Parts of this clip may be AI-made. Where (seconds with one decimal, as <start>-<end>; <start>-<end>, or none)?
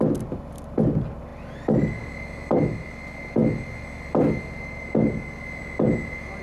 none